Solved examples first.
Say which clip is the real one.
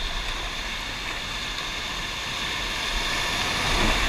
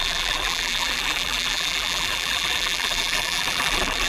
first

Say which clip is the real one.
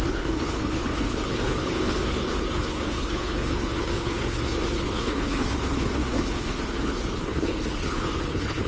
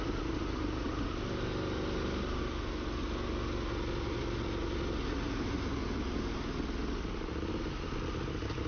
second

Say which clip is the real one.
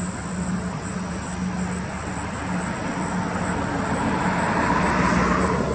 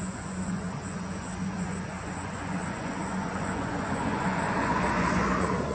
first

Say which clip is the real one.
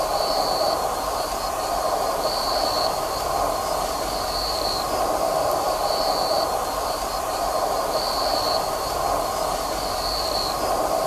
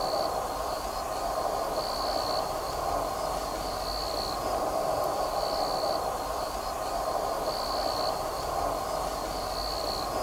second